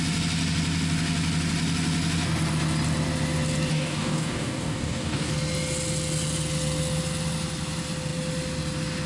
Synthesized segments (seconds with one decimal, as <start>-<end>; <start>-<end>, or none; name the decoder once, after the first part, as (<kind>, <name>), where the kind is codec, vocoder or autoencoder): 3.7-5.3 (codec, DAC)